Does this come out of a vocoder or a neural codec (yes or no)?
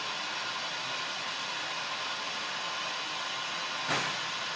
no